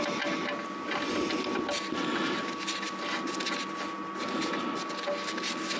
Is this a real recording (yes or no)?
yes